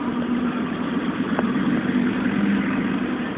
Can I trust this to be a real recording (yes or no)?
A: yes